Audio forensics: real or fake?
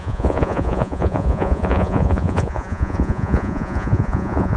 fake